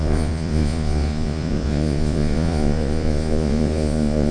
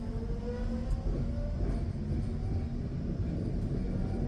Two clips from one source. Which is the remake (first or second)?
first